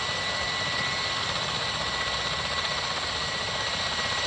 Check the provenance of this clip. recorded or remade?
recorded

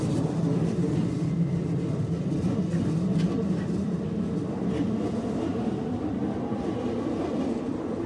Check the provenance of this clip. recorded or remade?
recorded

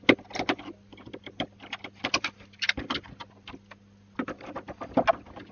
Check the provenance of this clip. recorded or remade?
recorded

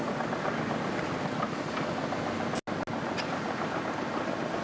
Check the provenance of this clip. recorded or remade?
recorded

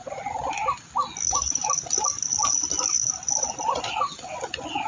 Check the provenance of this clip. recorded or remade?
recorded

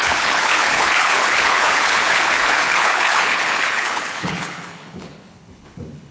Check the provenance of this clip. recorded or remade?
remade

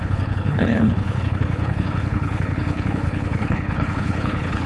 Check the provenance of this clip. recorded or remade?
remade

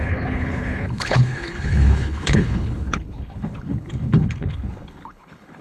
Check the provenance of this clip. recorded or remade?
remade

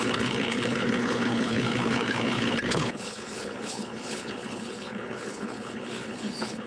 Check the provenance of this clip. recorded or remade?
remade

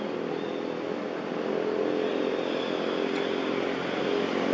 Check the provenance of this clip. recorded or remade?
recorded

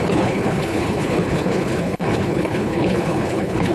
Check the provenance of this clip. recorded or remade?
remade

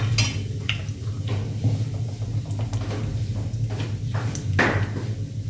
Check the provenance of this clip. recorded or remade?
recorded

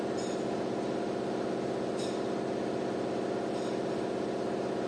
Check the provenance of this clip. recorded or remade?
recorded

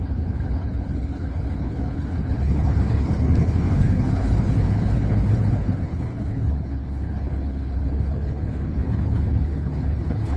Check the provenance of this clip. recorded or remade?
remade